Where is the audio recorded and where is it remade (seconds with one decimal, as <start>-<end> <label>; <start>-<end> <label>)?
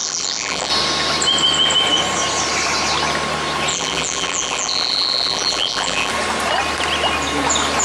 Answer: 0.0-0.7 remade; 0.7-3.7 recorded; 3.7-6.1 remade; 6.1-7.8 recorded